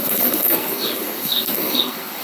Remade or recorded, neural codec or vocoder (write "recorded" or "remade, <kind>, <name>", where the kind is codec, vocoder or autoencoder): remade, codec, SNAC